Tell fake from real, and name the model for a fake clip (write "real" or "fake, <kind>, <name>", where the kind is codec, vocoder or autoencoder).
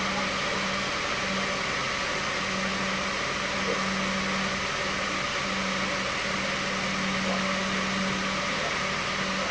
real